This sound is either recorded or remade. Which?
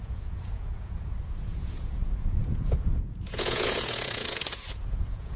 remade